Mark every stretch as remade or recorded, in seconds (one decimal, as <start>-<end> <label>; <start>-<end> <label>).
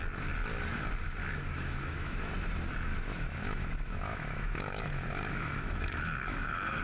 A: 0.0-1.2 recorded; 1.2-2.3 remade; 2.3-2.9 recorded; 2.9-6.8 remade